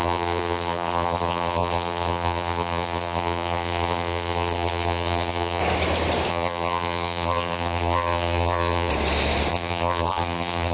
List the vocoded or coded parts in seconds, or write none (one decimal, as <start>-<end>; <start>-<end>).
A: 0.0-5.6; 6.3-8.9; 9.5-10.7

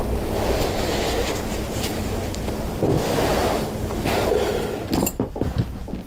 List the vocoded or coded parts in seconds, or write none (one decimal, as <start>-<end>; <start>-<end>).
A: 1.2-2.5; 3.3-4.5

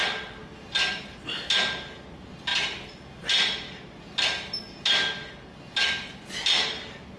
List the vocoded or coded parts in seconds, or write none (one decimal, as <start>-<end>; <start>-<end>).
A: none

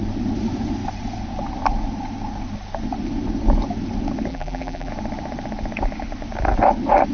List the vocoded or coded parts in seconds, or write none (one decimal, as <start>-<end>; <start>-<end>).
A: 4.3-4.9

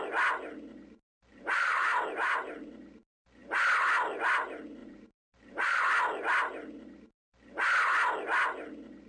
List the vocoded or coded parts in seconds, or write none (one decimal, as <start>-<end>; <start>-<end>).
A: 1.3-2.7; 4.8-5.8

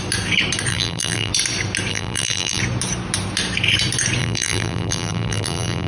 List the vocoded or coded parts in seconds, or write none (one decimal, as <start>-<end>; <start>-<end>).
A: 0.7-1.3; 1.9-2.6; 4.2-5.9

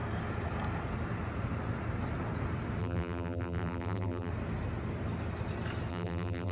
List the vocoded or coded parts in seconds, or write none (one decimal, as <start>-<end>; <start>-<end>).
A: 2.8-4.3; 5.9-6.5